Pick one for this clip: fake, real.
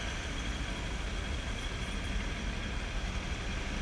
real